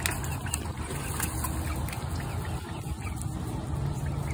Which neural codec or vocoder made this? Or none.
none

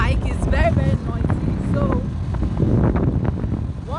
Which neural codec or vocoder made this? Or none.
none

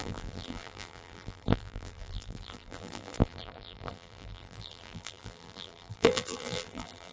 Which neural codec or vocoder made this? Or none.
vocoder, BigVGAN v2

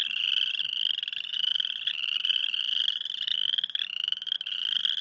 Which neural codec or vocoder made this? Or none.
none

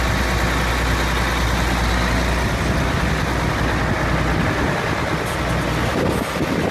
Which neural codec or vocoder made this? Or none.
none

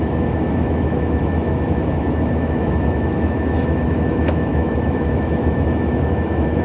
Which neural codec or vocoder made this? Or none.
autoencoder, DAC-VAE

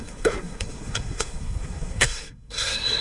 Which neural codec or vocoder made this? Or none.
codec, SNAC